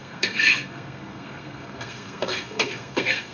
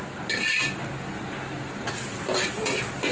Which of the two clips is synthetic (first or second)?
first